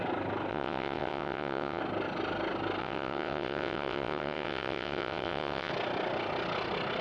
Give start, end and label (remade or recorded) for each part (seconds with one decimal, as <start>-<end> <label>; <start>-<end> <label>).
0.0-0.5 recorded; 0.5-1.8 remade; 1.8-2.8 recorded; 2.8-5.7 remade; 5.7-7.0 recorded